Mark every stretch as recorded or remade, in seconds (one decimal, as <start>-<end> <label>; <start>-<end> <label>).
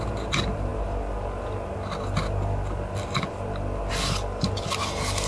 0.0-5.3 recorded